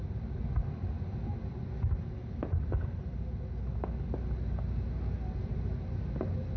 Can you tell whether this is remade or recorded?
recorded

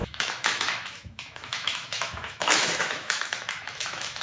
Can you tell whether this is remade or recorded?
remade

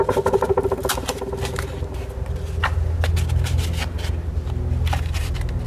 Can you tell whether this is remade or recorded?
recorded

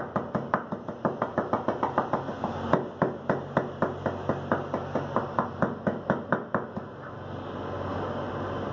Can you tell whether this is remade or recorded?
recorded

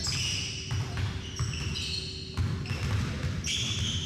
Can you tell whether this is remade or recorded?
recorded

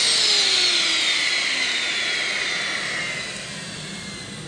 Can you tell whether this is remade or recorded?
recorded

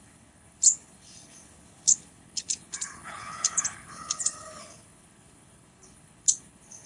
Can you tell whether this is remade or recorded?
remade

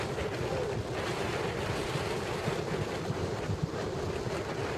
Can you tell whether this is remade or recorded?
recorded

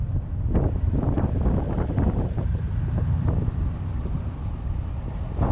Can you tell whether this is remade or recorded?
remade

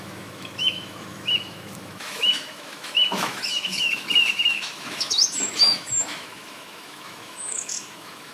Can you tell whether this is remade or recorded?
remade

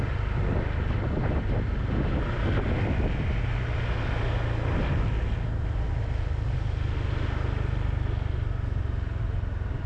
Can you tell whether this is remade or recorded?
recorded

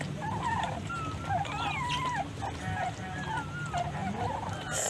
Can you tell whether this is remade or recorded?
recorded